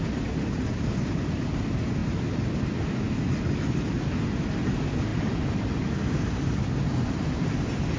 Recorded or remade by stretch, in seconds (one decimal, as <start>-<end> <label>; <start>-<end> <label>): 0.0-8.0 recorded